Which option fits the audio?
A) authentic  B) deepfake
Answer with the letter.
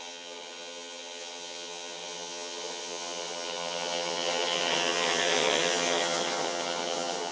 B